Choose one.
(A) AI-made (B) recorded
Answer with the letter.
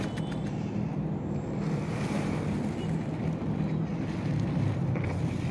B